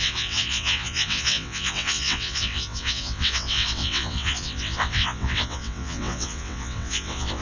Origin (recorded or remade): remade